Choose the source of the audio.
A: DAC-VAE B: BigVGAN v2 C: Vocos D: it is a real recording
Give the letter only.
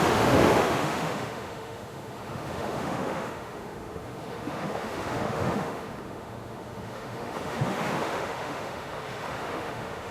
A